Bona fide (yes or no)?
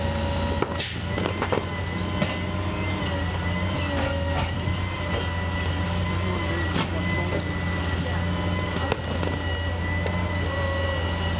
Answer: yes